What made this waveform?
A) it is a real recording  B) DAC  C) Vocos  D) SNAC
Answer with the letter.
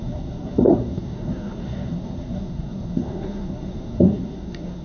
D